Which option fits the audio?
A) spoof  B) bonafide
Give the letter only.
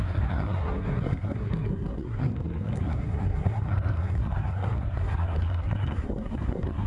A